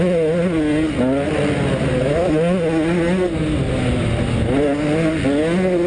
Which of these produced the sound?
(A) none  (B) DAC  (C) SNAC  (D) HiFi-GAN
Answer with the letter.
A